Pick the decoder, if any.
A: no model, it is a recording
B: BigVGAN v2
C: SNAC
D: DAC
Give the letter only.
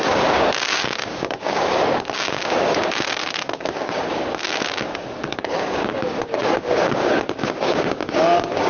D